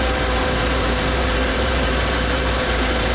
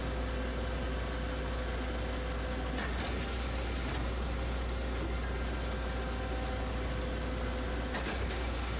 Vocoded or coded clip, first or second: first